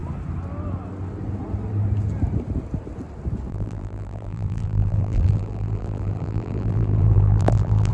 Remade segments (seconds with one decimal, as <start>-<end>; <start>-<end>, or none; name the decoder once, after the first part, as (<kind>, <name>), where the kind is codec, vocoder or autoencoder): 3.5-7.9 (vocoder, BigVGAN v2)

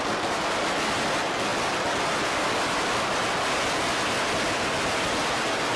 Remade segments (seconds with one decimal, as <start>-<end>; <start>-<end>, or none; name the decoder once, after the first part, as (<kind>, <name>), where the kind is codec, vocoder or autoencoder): none

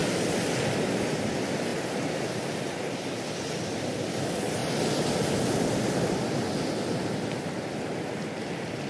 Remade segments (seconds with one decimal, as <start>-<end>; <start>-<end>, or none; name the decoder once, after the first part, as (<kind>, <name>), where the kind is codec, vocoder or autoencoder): 0.0-1.1 (vocoder, BigVGAN v2); 1.7-3.0; 4.6-6.4

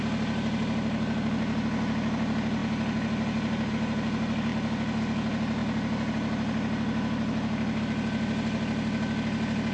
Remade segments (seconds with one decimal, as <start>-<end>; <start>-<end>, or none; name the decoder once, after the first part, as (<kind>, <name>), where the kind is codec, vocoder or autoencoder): none

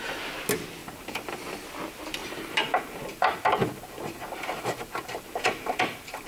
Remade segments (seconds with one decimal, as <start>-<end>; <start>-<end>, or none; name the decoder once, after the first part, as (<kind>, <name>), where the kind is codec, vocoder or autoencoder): 0.8-1.3 (vocoder, BigVGAN v2); 2.2-6.3

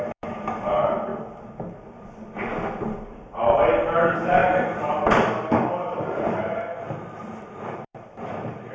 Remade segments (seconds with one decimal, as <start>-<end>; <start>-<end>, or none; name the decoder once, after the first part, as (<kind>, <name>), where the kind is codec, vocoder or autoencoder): 0.0-1.1 (vocoder, BigVGAN v2); 3.9-8.7